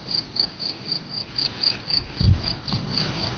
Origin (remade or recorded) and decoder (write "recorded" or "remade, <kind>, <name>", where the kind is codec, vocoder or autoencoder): remade, codec, DAC